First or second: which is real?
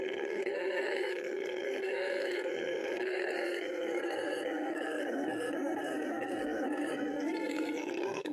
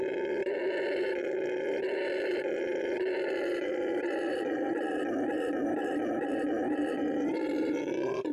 second